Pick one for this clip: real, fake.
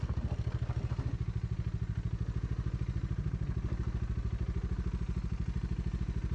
real